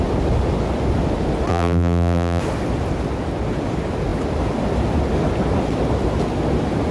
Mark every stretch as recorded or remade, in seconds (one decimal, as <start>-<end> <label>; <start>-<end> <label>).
0.0-1.5 recorded; 1.5-2.4 remade; 2.4-6.9 recorded